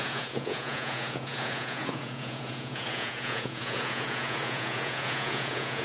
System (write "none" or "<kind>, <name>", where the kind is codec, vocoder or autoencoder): vocoder, Vocos